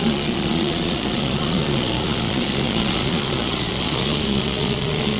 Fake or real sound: fake